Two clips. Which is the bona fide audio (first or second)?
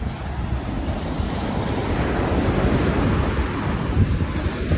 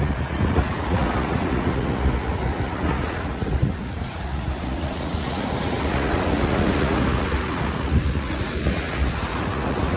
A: first